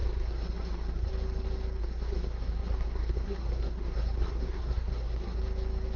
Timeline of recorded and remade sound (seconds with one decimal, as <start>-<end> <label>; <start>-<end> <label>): 0.0-1.1 remade; 1.1-1.8 recorded; 1.8-5.4 remade; 5.4-6.0 recorded